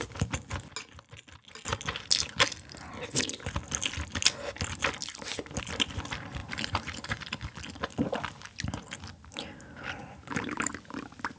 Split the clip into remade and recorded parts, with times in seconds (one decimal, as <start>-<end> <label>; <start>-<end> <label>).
0.0-6.4 recorded; 6.4-7.2 remade; 7.2-10.0 recorded; 10.0-10.7 remade; 10.7-11.4 recorded